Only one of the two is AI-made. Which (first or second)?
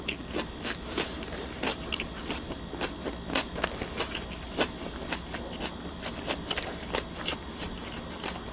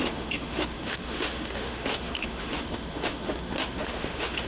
second